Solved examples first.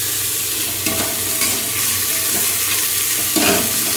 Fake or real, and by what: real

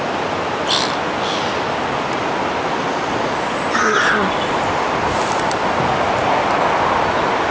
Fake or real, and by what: real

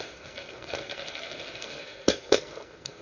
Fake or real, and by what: fake, codec, SNAC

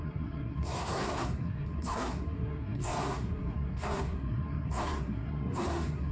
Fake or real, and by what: fake, codec, SNAC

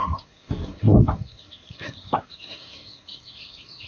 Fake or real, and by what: fake, codec, SNAC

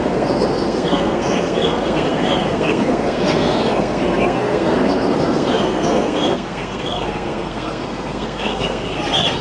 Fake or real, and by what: fake, codec, SNAC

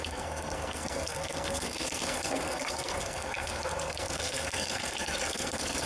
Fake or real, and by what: fake, codec, SNAC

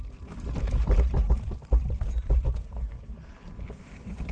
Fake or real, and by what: real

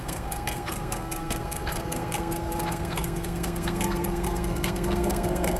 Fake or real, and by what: fake, codec, SNAC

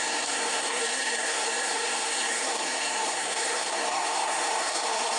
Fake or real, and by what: fake, codec, SNAC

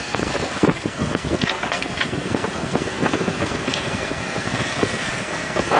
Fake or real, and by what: fake, codec, SNAC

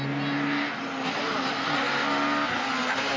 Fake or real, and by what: real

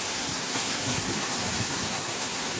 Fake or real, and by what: fake, codec, SNAC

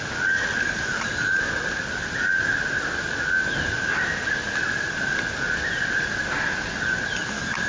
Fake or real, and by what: real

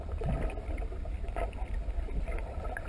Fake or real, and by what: real